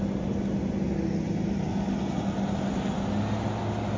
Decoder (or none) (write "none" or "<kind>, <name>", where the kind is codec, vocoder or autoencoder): none